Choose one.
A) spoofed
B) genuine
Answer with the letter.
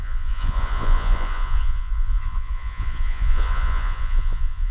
A